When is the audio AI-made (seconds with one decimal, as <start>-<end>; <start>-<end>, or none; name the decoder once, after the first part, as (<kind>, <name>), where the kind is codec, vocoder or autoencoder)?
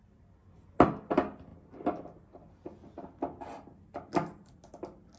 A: none